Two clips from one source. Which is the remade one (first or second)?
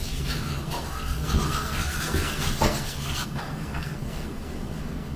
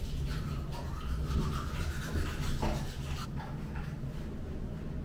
first